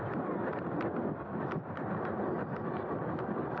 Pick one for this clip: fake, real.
fake